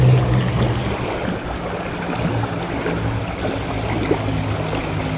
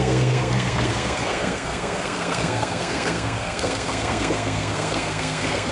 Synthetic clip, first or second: second